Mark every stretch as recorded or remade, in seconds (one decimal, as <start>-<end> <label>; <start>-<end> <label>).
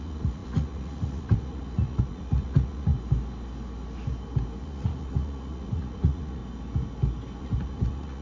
0.0-2.9 remade; 2.9-4.6 recorded; 4.6-6.4 remade; 6.4-7.4 recorded; 7.4-8.2 remade